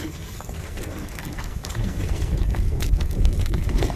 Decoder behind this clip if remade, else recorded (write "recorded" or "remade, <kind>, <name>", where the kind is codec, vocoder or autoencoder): remade, codec, SNAC